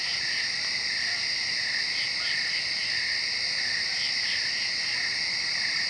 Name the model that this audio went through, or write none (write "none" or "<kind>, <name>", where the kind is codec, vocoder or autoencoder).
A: none